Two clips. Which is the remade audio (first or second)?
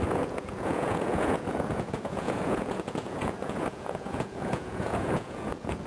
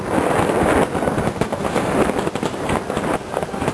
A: first